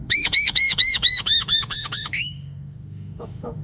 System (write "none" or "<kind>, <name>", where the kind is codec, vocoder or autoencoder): autoencoder, DAC-VAE